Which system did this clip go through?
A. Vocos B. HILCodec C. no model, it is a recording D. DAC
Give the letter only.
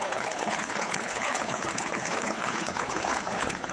B